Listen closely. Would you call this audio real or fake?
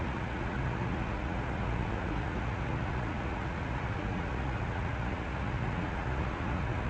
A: fake